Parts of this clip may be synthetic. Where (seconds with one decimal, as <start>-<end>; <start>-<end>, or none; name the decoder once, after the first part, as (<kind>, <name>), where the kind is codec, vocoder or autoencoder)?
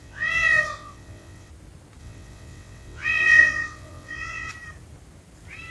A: 0.0-1.5 (vocoder, WaveNeXt); 2.0-4.5